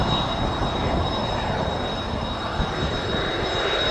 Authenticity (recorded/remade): recorded